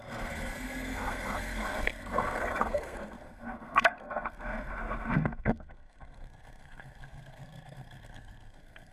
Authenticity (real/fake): fake